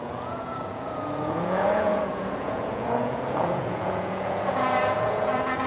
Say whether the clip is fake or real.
fake